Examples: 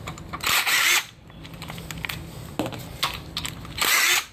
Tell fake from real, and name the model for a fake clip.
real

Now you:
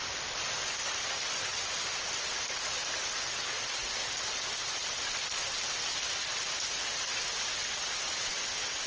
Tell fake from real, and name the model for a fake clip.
real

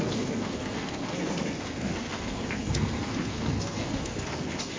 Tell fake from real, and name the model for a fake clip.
fake, codec, SNAC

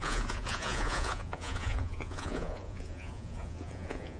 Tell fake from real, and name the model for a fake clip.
fake, vocoder, Vocos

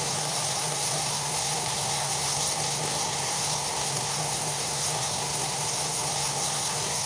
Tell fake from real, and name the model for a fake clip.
fake, codec, SNAC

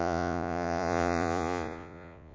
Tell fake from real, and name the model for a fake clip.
fake, vocoder, Vocos